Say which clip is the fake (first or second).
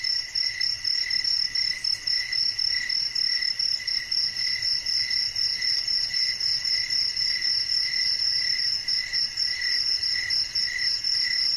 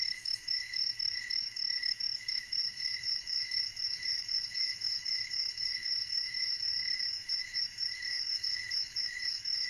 second